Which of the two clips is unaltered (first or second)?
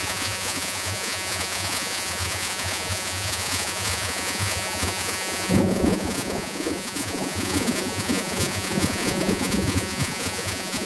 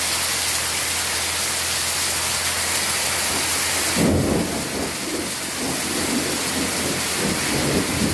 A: second